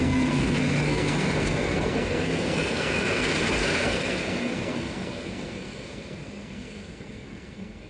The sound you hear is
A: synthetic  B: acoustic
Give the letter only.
A